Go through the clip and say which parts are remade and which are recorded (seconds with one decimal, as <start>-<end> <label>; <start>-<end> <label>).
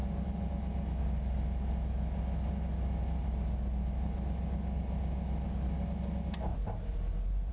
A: 0.0-6.5 recorded; 6.5-7.5 remade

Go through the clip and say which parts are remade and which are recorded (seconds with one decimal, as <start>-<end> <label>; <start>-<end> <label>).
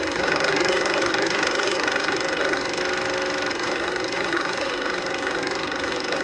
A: 0.0-2.8 remade; 2.8-3.5 recorded; 3.5-6.2 remade